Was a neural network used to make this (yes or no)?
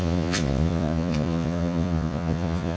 yes